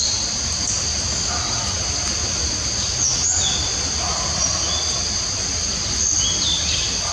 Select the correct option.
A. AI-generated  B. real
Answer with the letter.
B